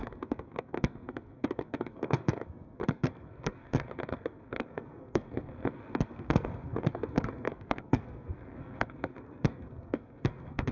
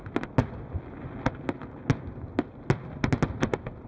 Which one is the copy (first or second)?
first